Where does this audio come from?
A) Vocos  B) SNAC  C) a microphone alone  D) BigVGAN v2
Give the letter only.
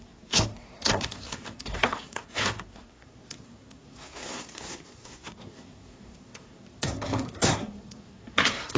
B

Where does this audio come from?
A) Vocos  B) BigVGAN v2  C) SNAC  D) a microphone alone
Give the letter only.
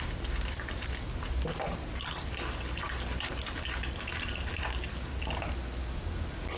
D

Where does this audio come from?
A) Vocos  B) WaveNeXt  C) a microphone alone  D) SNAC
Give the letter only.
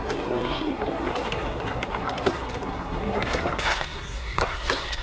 D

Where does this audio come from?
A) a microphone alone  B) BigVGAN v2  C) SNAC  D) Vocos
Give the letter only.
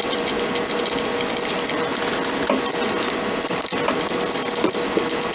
A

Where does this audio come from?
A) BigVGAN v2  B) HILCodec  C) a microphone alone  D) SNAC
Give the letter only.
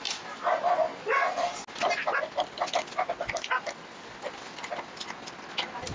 C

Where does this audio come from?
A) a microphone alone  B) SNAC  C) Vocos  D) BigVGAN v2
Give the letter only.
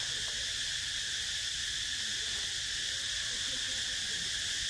A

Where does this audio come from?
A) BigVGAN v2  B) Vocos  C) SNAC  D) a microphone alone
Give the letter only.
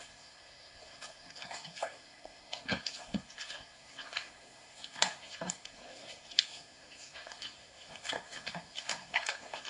C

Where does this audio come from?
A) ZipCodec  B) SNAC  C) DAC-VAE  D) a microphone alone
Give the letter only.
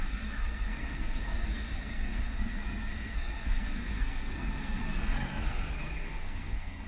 B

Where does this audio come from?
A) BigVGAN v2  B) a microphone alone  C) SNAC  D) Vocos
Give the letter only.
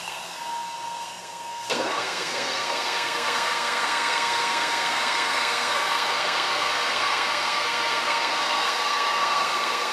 C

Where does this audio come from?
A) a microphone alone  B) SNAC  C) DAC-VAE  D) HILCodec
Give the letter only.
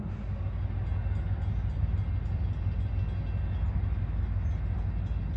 A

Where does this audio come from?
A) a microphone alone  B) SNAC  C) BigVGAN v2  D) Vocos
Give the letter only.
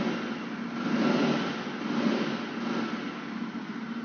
A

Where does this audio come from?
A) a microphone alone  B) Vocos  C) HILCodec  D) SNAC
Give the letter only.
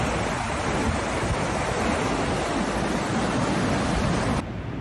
A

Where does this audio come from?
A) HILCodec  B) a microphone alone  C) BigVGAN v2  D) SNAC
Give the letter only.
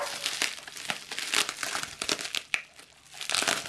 B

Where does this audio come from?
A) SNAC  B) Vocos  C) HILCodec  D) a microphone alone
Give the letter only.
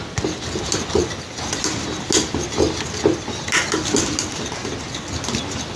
D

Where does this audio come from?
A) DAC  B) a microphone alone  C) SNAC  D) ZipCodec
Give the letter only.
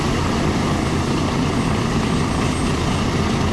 B